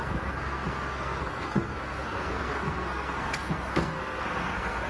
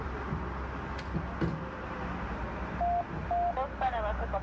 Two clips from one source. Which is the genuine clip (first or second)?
second